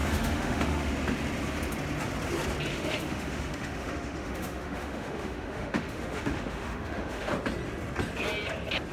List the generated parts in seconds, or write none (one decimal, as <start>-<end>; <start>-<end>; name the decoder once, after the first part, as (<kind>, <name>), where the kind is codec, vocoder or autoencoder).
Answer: 0.0-0.9 (autoencoder, DAC-VAE); 2.7-7.3